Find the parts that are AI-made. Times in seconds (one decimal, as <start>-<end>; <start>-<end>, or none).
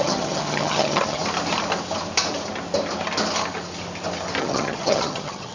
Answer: 0.0-1.2; 4.4-5.5